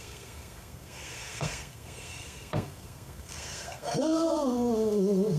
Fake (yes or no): yes